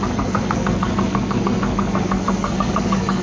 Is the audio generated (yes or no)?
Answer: yes